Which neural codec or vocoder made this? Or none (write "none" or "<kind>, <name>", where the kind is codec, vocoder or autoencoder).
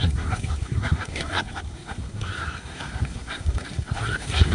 codec, SNAC